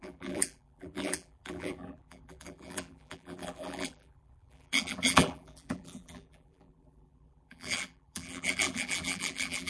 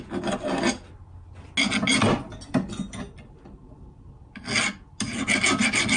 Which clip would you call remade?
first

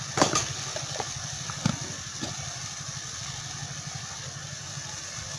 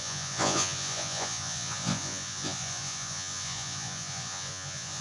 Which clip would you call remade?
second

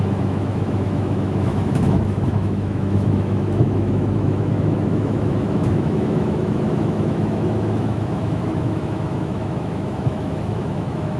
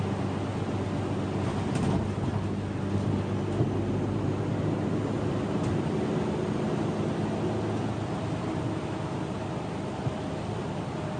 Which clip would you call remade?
first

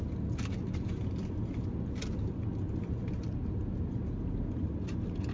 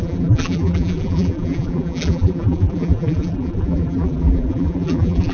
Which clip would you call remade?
second